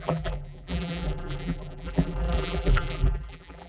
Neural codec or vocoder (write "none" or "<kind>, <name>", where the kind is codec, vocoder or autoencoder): vocoder, BigVGAN v2